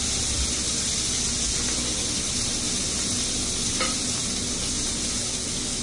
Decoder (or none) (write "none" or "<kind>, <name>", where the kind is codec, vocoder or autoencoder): none